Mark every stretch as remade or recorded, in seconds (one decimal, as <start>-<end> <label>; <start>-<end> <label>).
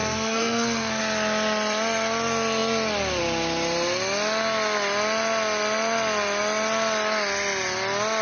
0.0-1.0 remade; 1.0-8.2 recorded